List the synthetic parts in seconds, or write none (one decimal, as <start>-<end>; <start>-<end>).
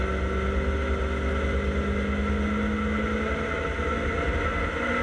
none